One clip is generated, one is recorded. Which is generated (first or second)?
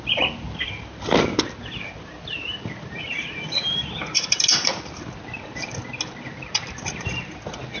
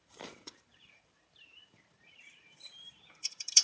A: second